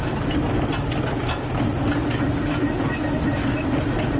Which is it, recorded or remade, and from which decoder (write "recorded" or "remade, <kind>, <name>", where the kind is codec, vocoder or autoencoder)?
recorded